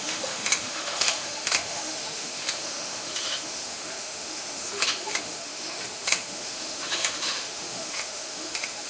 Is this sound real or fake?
fake